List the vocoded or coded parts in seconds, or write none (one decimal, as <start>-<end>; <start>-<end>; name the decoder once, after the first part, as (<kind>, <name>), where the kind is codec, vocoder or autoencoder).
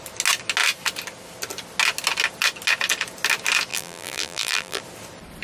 3.7-4.8 (vocoder, BigVGAN v2)